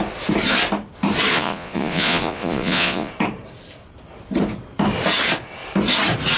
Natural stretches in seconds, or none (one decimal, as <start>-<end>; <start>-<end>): 0.0-1.3; 3.1-6.4